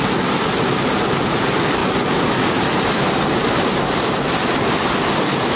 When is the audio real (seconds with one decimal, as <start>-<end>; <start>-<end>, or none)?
0.0-5.6